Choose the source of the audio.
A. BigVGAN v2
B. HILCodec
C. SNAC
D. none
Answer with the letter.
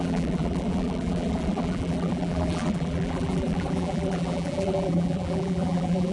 A